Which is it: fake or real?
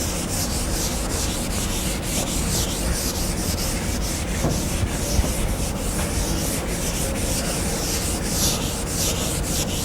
real